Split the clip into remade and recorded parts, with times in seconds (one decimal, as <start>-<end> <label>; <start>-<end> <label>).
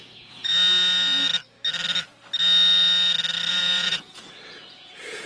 0.0-0.5 remade; 0.5-3.5 recorded; 3.5-5.3 remade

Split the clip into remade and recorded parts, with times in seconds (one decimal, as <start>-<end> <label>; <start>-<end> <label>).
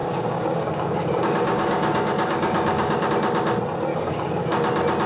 0.0-3.1 remade; 3.1-3.9 recorded; 3.9-4.5 remade; 4.5-5.1 recorded